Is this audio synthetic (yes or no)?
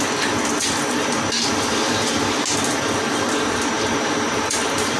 no